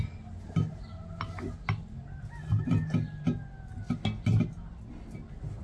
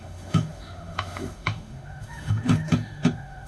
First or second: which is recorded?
first